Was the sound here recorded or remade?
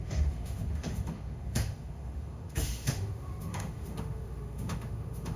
remade